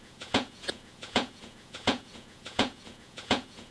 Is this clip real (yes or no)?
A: no